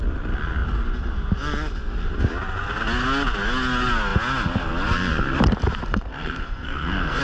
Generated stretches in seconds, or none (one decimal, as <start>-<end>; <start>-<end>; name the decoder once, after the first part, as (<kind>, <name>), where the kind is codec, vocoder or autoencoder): 5.9-7.2 (codec, SNAC)